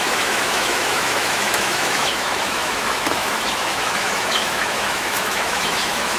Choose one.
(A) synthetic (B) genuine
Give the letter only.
A